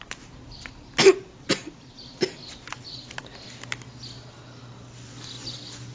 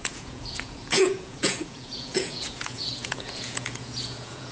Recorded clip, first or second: first